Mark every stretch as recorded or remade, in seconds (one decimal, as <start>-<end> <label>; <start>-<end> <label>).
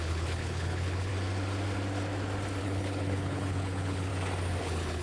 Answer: 0.0-1.1 remade; 1.1-2.6 recorded; 2.6-4.1 remade; 4.1-4.6 recorded; 4.6-5.0 remade